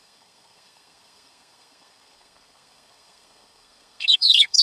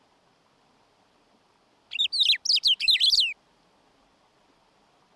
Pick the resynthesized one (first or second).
first